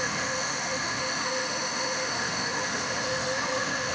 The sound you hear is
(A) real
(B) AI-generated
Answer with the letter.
B